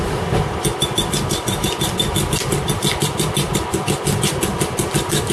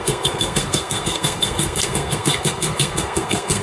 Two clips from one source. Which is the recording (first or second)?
first